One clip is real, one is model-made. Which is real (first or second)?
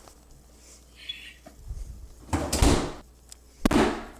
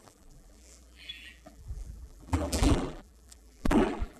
first